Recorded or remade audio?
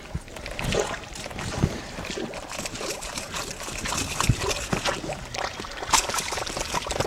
recorded